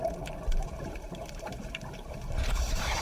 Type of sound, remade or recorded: remade